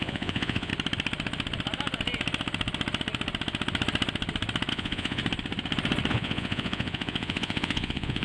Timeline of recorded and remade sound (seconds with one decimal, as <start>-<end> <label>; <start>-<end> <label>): 0.0-0.7 remade; 0.7-4.7 recorded; 4.7-5.2 remade; 5.2-6.1 recorded; 6.1-8.2 remade